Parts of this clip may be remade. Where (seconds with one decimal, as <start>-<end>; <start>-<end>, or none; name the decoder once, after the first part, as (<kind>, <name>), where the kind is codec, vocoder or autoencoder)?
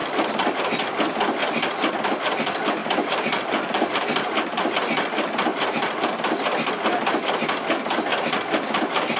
0.0-0.6 (vocoder, BigVGAN v2); 2.8-4.7; 5.5-6.7